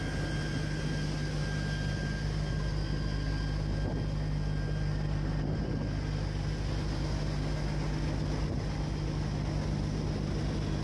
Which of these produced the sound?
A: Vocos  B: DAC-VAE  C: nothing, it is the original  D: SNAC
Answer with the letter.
C